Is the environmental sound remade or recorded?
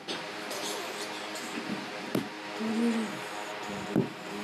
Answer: recorded